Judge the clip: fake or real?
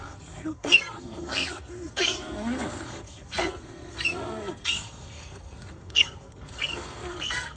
fake